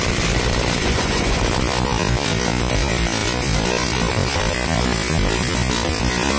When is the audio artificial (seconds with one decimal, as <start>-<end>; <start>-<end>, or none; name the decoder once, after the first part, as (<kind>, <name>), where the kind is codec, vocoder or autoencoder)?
0.8-1.4 (vocoder, Vocos)